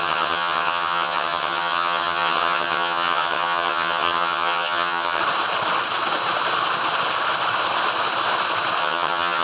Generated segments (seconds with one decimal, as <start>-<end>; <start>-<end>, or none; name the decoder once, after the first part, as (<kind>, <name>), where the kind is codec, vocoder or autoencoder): 0.0-5.2 (vocoder, HiFi-GAN); 8.8-9.4